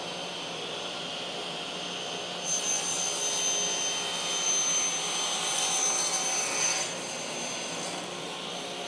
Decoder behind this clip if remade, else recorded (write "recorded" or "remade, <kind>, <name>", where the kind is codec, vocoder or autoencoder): recorded